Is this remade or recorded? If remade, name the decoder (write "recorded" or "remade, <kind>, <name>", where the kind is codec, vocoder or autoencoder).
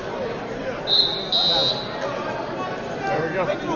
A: recorded